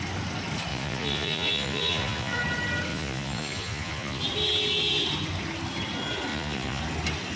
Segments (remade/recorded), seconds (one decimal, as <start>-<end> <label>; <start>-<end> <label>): 0.0-0.7 recorded; 0.7-2.4 remade; 2.4-2.9 recorded; 2.9-4.2 remade; 4.2-6.3 recorded; 6.3-6.8 remade; 6.8-7.4 recorded

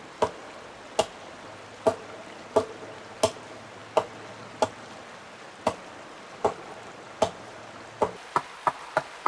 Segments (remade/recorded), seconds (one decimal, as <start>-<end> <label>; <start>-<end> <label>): 0.0-9.3 recorded